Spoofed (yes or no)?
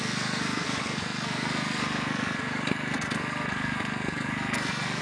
yes